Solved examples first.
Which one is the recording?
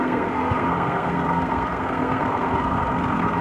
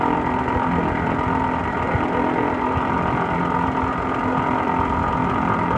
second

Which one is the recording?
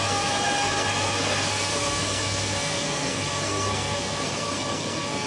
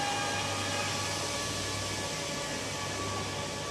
second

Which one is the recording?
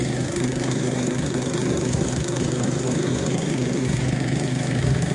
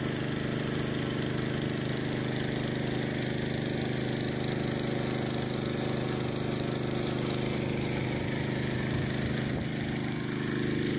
second